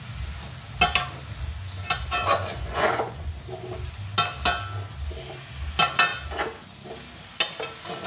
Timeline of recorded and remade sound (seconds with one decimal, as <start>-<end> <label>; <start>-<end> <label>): 0.0-2.2 recorded; 2.2-3.3 remade; 3.3-8.1 recorded